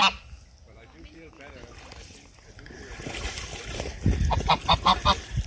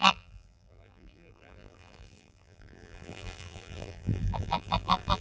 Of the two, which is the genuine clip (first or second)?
first